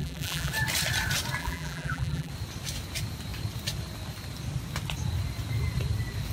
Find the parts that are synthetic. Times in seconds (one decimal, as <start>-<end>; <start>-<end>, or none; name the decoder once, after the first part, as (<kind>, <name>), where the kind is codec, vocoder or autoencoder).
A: 0.0-0.5 (vocoder, BigVGAN v2); 1.4-2.3